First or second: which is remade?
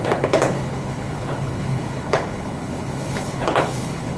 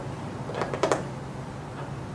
first